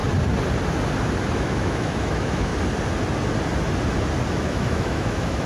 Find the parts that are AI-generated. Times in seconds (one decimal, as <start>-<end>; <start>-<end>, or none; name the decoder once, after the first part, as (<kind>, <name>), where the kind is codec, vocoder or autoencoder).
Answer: 1.4-2.5 (autoencoder, DAC-VAE); 4.3-5.5